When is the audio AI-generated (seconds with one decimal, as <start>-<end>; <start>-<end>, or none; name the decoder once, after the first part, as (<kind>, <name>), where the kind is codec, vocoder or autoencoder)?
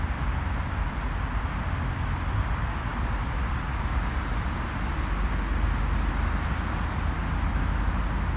none